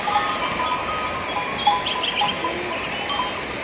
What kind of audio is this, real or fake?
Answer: real